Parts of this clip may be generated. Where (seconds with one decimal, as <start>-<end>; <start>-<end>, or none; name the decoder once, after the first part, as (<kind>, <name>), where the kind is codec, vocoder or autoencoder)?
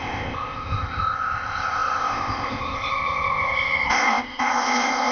0.0-5.1 (codec, ZipCodec)